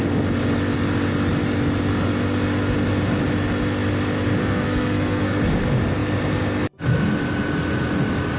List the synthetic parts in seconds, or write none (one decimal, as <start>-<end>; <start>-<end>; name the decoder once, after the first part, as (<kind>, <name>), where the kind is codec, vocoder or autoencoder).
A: 4.4-5.4 (codec, SNAC)